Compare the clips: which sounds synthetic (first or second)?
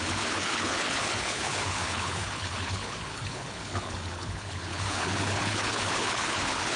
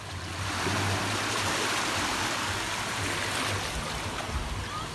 first